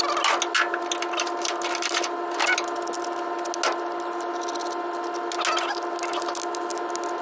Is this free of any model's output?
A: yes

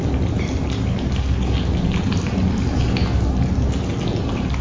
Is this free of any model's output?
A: yes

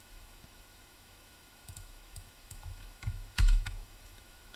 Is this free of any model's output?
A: no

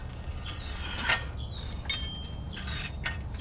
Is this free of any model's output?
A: yes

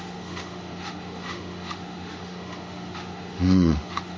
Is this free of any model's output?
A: no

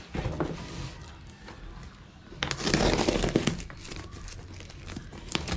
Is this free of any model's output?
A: yes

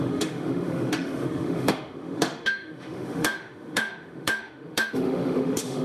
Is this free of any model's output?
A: no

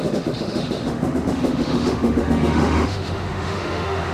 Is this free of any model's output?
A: no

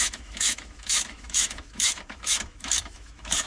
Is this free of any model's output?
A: no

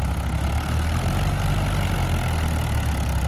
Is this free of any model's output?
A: yes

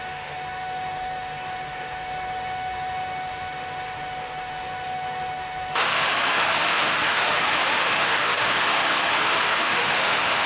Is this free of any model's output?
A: no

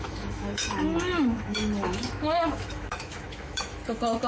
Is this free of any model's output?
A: no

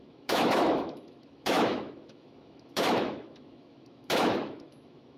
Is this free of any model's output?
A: no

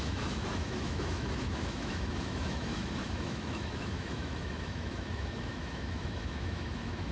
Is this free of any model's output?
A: no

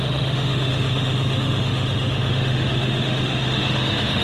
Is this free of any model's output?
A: no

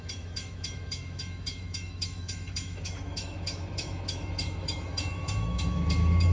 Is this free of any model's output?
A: no